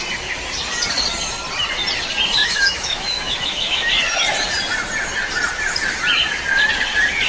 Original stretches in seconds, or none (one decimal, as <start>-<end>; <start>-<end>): 0.0-2.4; 3.9-7.3